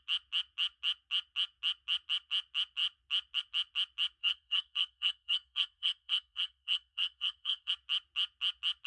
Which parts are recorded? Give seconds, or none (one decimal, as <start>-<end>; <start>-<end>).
0.0-4.2; 7.7-8.9